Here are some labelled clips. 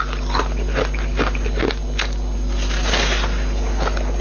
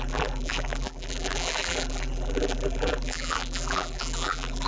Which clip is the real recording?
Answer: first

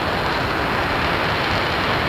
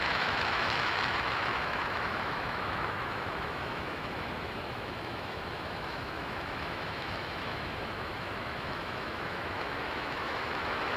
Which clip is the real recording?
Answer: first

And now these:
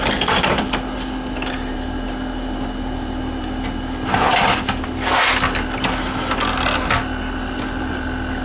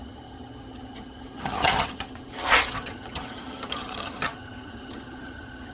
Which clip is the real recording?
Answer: first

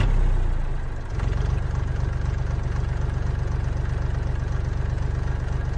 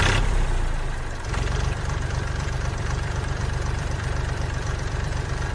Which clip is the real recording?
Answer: first